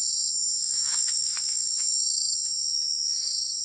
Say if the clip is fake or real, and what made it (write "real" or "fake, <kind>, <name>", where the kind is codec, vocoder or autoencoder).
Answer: fake, autoencoder, DAC-VAE